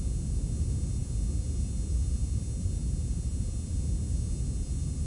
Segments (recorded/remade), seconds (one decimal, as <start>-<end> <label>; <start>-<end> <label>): 0.0-5.1 recorded